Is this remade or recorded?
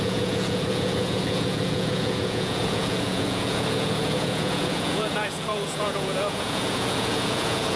remade